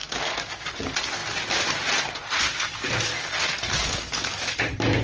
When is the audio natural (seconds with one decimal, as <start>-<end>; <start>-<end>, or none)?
0.7-3.1; 4.6-5.0